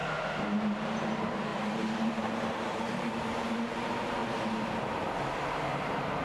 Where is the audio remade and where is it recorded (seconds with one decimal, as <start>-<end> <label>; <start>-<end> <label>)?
0.0-0.6 recorded; 0.6-4.2 remade; 4.2-5.2 recorded; 5.2-6.2 remade